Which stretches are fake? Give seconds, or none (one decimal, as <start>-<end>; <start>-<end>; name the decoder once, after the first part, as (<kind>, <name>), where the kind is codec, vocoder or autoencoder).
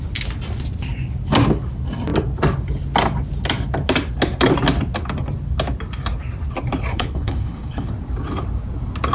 6.9-7.9 (codec, HILCodec)